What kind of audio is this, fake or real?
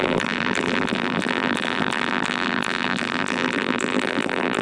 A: fake